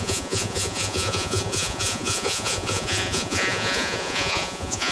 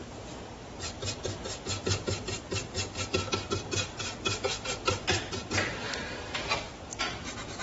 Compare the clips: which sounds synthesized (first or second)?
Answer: first